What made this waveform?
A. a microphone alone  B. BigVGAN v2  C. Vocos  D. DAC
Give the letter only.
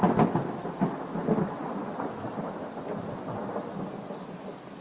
A